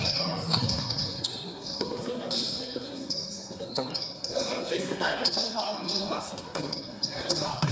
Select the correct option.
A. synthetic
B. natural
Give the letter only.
A